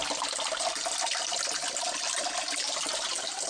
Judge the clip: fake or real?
real